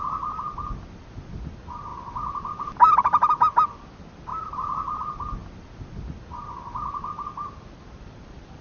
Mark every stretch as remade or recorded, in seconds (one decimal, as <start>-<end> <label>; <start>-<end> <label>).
0.0-8.6 recorded